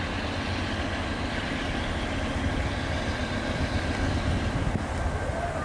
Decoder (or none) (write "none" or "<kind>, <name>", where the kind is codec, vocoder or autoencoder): none